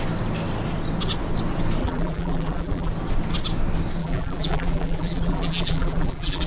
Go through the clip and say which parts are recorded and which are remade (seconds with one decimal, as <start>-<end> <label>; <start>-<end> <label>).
0.0-1.8 recorded; 1.8-2.9 remade; 2.9-4.0 recorded; 4.0-6.5 remade

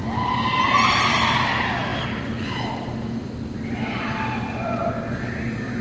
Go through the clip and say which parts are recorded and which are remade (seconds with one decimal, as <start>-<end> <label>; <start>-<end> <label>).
0.0-5.8 recorded

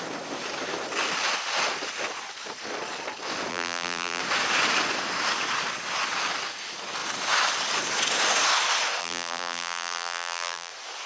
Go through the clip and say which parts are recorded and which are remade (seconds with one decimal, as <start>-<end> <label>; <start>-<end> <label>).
0.0-3.5 recorded; 3.5-4.2 remade; 4.2-9.0 recorded; 9.0-10.7 remade; 10.7-11.1 recorded

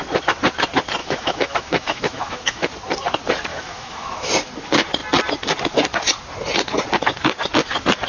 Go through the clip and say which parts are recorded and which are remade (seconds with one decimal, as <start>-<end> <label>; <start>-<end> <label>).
0.0-1.0 recorded; 1.0-2.7 remade; 2.7-3.5 recorded; 3.5-4.3 remade; 4.3-8.1 recorded

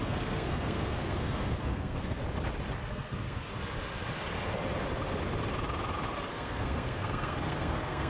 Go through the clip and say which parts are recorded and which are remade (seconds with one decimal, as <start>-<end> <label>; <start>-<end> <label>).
0.0-2.2 remade; 2.2-2.9 recorded; 2.9-3.5 remade; 3.5-6.3 recorded; 6.3-8.1 remade